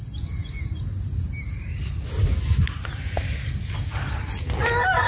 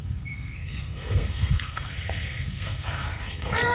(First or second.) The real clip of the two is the first